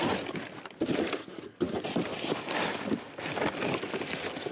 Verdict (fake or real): real